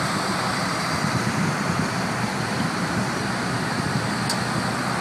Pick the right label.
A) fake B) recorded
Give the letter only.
A